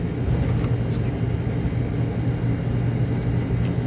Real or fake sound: real